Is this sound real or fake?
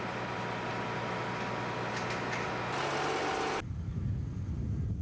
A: real